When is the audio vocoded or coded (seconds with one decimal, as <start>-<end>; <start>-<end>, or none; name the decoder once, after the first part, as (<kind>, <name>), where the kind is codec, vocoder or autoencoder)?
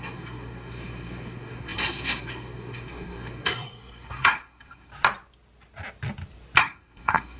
0.0-4.9 (codec, SNAC); 6.6-7.4